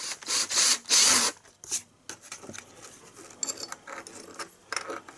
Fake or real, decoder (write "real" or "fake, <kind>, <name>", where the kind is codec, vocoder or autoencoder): real